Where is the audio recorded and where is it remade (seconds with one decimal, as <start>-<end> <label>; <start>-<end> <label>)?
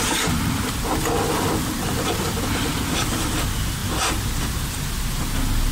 0.0-5.7 recorded